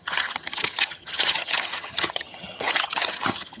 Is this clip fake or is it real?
fake